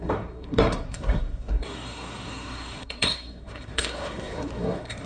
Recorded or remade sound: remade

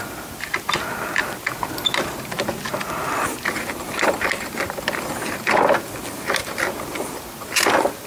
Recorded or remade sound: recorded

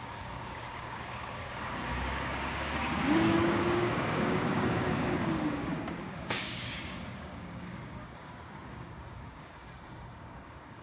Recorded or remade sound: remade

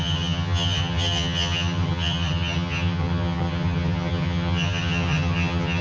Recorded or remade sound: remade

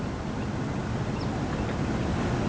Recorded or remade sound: recorded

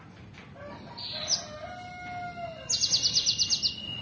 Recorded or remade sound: recorded